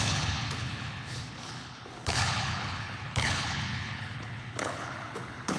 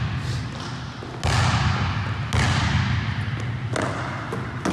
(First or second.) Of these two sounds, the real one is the second